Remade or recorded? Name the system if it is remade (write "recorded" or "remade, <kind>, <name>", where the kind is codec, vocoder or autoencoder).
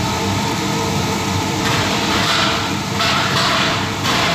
remade, vocoder, BigVGAN v2